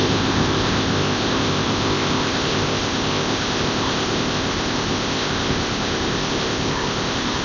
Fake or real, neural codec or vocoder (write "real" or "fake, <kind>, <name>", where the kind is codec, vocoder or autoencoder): fake, codec, ZipCodec